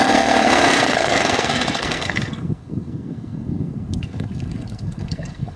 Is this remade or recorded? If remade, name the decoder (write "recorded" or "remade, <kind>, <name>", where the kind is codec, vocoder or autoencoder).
remade, codec, SNAC